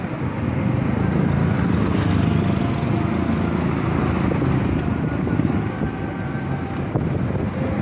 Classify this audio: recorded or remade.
recorded